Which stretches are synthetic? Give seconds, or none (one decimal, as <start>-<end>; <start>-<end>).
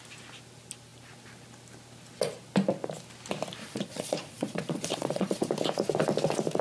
3.6-5.5